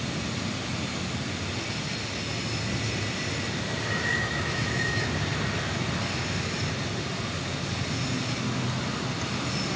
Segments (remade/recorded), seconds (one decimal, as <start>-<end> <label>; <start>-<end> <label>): 0.0-4.1 recorded; 4.1-5.1 remade; 5.1-9.8 recorded